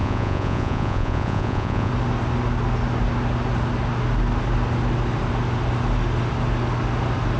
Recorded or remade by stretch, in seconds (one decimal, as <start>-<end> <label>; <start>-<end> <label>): 0.0-1.9 remade; 1.9-7.4 recorded